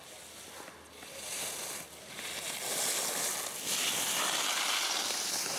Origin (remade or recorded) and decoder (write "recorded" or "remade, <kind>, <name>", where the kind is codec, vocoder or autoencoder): recorded